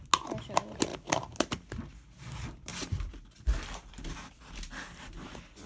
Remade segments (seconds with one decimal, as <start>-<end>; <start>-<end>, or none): none